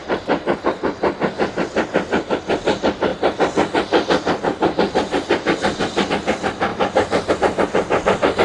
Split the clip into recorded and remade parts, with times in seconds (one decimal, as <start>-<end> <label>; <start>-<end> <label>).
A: 0.0-8.4 recorded